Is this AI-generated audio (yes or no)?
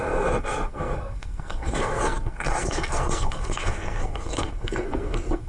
yes